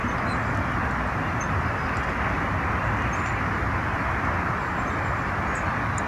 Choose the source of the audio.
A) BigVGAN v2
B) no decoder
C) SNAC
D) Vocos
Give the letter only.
B